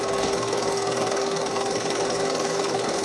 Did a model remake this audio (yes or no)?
yes